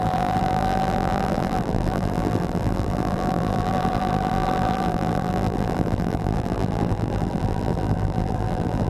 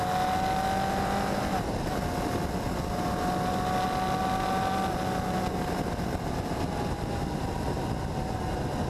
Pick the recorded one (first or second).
second